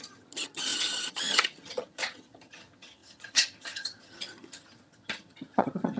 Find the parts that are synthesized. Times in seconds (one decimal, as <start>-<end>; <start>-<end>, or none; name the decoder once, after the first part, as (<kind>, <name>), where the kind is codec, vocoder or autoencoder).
0.0-6.0 (vocoder, HiFi-GAN)